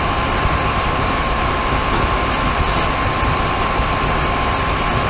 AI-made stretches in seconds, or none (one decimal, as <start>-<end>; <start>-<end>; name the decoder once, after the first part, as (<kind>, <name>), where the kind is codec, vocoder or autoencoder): 0.0-1.6 (vocoder, BigVGAN v2)